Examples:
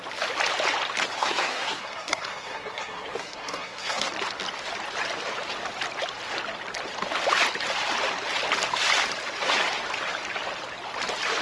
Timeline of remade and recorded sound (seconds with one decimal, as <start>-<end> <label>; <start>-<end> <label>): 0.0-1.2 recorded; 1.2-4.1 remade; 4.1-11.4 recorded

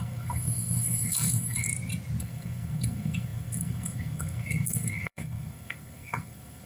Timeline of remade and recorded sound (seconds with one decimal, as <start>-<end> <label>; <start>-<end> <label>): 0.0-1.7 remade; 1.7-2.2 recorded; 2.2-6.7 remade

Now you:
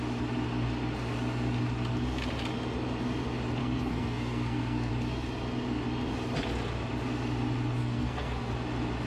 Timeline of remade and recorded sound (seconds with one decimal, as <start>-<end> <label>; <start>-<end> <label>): 0.0-3.6 recorded; 3.6-4.9 remade; 4.9-7.8 recorded; 7.8-8.5 remade; 8.5-9.1 recorded